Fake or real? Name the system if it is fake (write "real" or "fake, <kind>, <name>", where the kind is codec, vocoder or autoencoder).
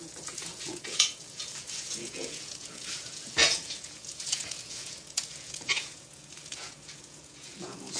fake, vocoder, Vocos